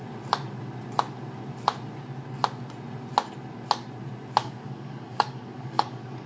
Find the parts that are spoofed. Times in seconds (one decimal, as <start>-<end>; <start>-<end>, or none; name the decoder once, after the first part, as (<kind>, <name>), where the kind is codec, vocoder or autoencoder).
4.4-6.3 (codec, DAC)